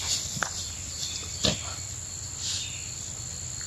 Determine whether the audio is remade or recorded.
recorded